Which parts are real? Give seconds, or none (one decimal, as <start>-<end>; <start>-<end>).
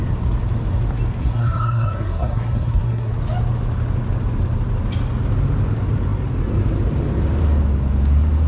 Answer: 0.0-1.2; 3.1-8.5